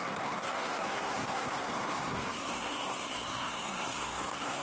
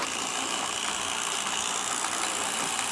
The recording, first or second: second